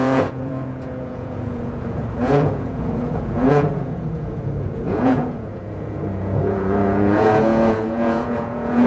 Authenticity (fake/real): fake